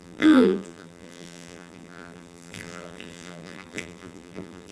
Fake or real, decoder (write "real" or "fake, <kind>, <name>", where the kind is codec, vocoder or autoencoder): fake, vocoder, BigVGAN v2